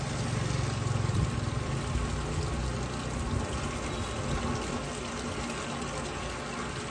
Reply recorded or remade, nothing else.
recorded